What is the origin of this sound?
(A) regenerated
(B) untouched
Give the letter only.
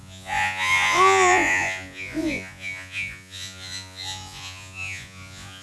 A